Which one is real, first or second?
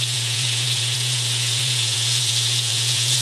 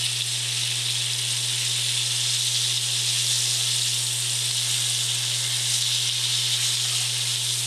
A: second